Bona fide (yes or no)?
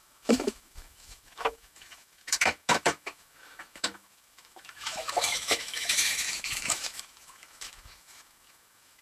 no